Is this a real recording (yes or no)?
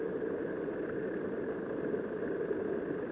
yes